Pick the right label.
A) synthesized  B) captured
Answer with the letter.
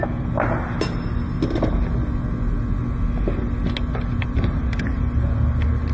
B